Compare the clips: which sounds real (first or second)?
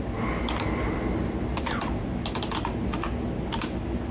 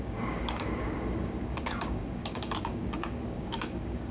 first